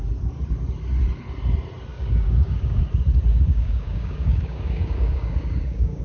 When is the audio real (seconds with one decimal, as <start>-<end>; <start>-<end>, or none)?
0.0-1.9; 2.8-3.3